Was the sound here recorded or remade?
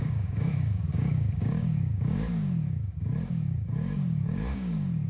remade